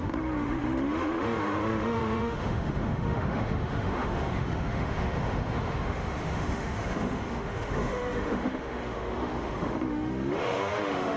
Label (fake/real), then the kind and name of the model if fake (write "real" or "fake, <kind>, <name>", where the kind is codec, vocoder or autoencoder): fake, autoencoder, DAC-VAE